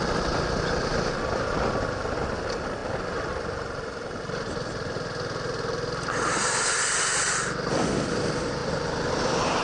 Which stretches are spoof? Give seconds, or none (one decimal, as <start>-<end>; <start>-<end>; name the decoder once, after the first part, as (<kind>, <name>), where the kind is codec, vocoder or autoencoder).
none